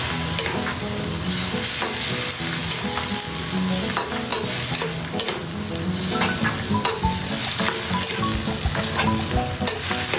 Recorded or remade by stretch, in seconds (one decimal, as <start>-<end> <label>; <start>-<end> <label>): 0.0-10.2 recorded